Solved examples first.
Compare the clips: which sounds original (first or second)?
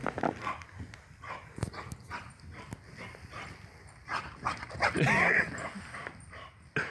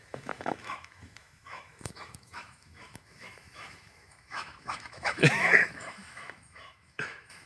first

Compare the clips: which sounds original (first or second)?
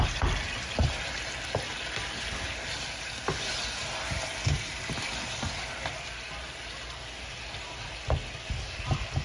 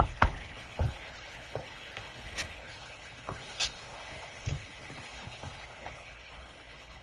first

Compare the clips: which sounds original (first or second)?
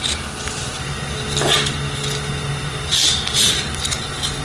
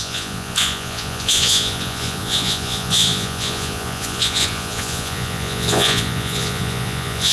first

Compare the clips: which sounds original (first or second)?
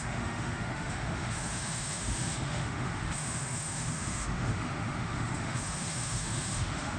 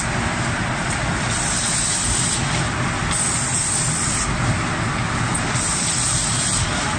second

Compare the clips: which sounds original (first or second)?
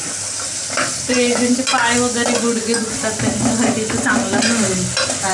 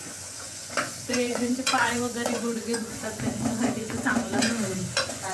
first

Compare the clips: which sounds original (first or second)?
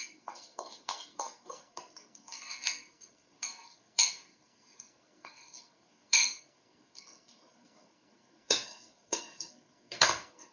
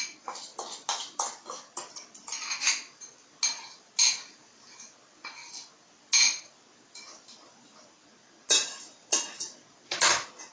second